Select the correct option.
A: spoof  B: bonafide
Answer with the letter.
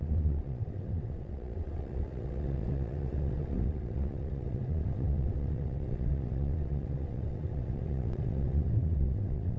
A